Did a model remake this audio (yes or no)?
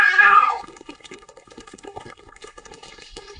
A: yes